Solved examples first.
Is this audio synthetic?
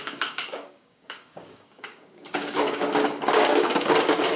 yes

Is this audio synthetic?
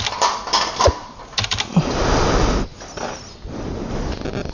no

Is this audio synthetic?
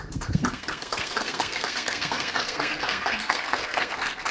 yes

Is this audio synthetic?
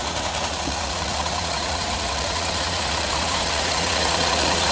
yes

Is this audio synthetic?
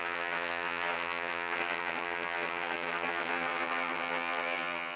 yes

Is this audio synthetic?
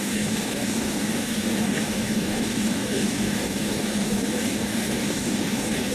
yes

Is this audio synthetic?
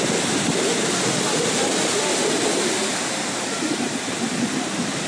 no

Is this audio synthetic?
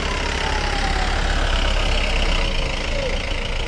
no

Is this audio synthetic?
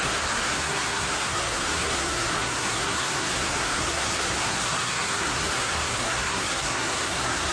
yes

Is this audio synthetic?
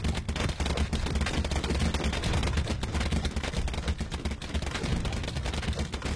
no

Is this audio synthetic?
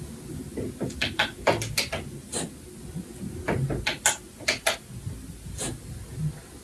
no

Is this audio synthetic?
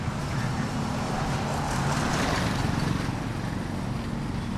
no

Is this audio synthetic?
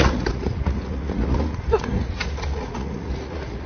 yes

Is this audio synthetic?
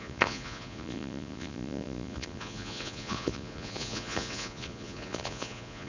yes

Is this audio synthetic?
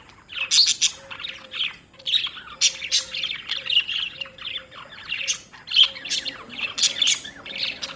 no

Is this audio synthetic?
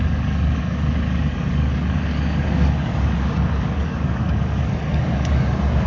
yes